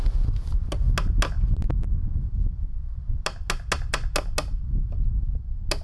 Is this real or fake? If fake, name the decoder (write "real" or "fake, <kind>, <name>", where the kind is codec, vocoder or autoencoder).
real